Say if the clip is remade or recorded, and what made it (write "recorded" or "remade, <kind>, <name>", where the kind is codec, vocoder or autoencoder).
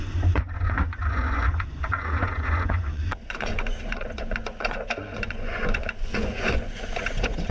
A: remade, vocoder, Vocos